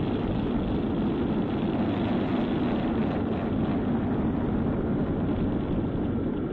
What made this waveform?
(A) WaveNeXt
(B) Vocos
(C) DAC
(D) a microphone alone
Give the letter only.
D